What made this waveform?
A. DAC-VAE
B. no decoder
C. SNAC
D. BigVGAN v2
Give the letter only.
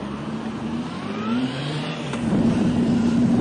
D